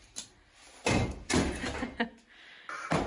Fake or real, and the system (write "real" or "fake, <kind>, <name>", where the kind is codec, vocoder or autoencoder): real